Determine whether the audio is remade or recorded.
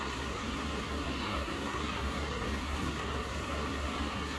remade